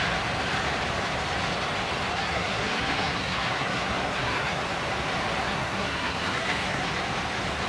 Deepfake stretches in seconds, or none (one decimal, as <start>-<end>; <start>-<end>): 2.1-4.6; 5.4-6.9